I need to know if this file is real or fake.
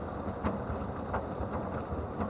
real